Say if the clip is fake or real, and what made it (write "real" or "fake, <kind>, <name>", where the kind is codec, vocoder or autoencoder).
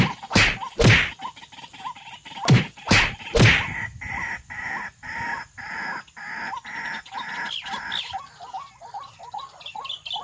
real